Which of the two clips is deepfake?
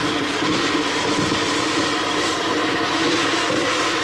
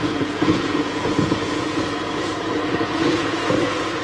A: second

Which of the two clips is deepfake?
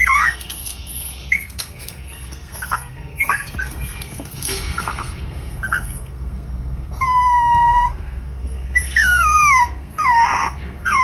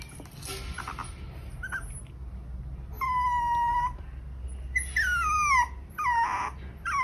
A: first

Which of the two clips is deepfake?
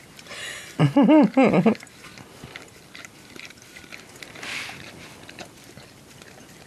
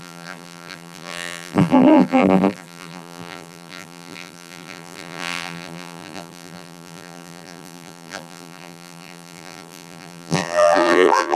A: second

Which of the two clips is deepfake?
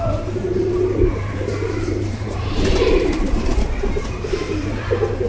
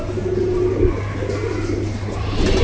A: first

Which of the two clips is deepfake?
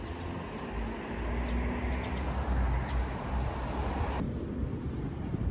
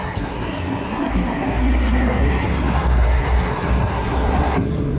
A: second